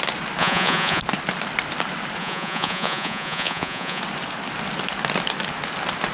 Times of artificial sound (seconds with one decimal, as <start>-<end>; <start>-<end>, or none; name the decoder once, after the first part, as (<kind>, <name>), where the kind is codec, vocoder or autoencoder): 0.4-1.0 (vocoder, Vocos); 2.2-4.0